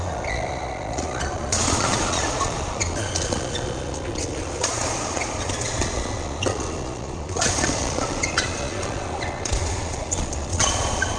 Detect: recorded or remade remade